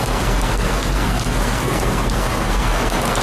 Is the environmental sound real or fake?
fake